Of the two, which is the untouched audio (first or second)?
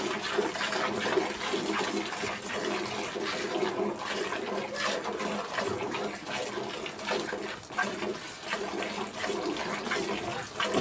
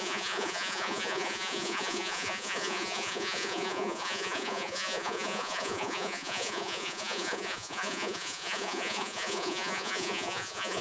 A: first